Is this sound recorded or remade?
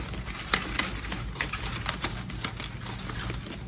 recorded